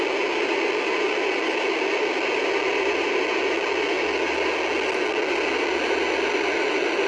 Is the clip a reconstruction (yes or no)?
no